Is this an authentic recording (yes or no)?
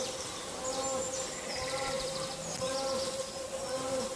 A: yes